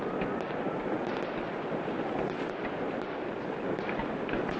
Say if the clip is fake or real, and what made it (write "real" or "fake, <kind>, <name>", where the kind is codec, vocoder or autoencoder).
fake, vocoder, BigVGAN v2